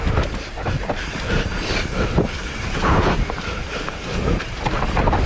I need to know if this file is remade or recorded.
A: recorded